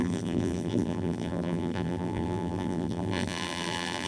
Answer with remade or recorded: remade